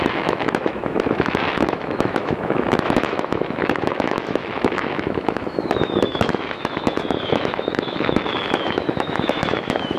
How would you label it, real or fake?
fake